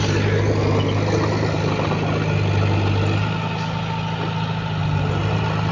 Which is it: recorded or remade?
recorded